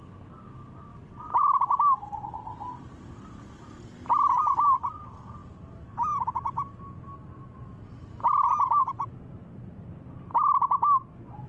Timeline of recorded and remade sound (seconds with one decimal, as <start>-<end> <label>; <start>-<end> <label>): 0.0-0.9 recorded; 0.9-1.8 remade; 1.8-11.5 recorded